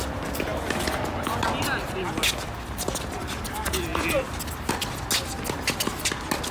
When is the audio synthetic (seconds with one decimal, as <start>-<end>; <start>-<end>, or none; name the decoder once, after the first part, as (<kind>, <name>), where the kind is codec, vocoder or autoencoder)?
none